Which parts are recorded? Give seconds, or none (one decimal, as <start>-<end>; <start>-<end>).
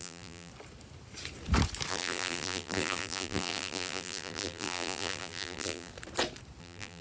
0.5-1.9; 5.9-6.6